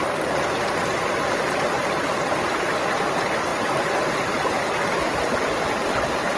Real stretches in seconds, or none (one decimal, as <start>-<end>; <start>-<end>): 0.0-6.4